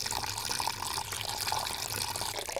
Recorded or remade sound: recorded